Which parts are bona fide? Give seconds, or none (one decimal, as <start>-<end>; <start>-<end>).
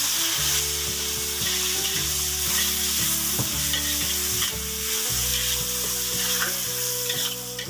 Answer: 0.0-7.7